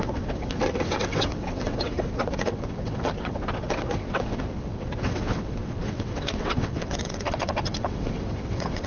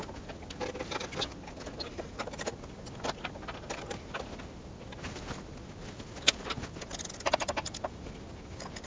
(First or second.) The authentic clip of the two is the second